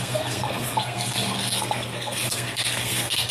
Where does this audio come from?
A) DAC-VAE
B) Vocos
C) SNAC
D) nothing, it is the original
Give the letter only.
C